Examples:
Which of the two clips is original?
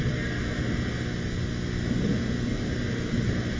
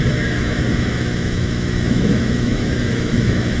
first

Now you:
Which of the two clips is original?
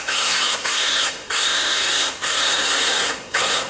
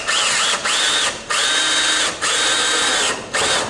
second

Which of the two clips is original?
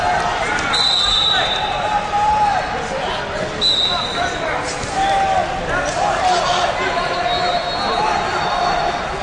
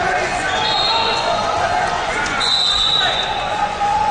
first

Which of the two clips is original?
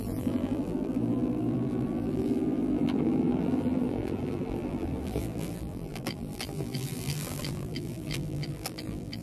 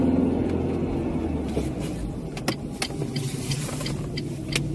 second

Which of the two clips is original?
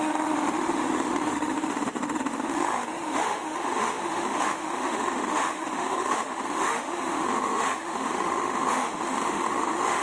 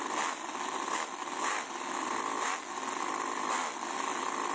second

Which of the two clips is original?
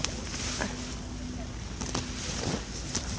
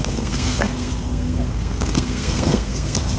first